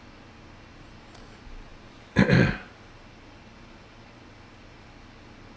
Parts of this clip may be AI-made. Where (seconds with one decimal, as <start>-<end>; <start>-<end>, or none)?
none